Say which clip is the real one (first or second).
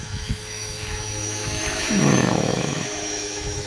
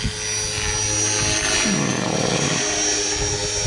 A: second